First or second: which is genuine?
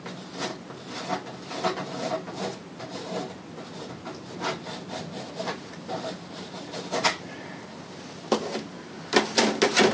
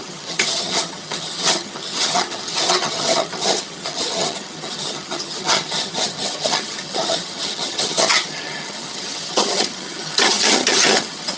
first